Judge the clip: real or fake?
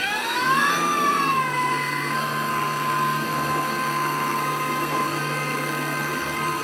fake